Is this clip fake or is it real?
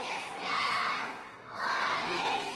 fake